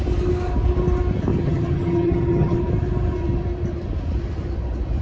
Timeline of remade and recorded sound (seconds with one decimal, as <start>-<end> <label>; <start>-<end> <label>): 0.0-1.3 recorded; 1.3-2.6 remade; 2.6-5.0 recorded